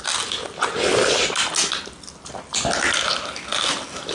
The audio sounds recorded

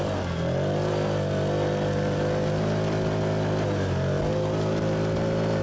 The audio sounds recorded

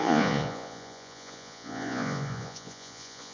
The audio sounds remade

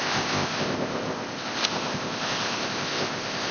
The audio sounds remade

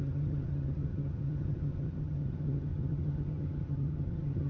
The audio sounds remade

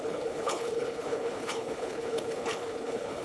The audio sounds remade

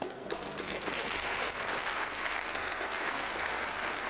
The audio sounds remade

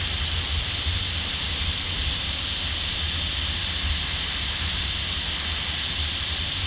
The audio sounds recorded